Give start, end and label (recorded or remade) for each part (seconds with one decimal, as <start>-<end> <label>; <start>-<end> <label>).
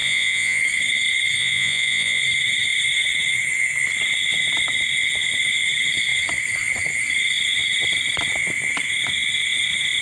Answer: 0.0-0.6 remade; 0.6-1.4 recorded; 1.4-2.2 remade; 2.2-10.0 recorded